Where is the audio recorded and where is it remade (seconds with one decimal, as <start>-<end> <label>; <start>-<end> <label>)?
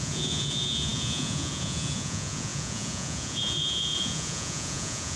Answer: 0.0-5.2 remade